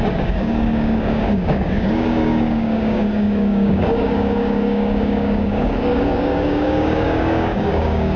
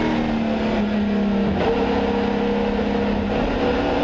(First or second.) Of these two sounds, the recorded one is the second